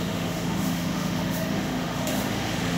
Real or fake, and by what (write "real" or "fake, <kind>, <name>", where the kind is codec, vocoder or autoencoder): fake, autoencoder, DAC-VAE